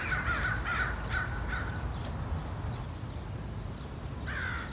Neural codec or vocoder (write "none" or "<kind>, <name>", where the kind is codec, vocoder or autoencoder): none